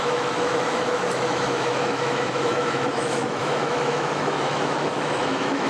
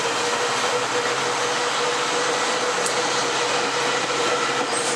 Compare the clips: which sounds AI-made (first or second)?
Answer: first